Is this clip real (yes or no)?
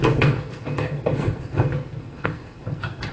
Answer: no